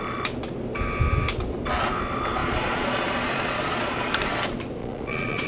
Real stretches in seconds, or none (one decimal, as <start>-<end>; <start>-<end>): 0.0-2.4; 4.0-4.8